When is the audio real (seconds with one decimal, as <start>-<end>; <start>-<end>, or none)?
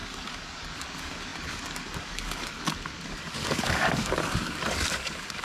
none